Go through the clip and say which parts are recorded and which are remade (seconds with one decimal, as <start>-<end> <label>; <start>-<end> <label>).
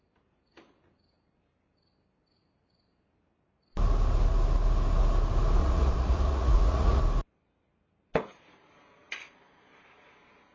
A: 0.0-5.6 recorded; 5.6-7.0 remade; 7.0-10.5 recorded